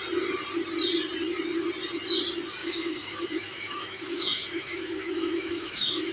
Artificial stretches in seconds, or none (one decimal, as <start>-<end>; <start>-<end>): 2.6-6.1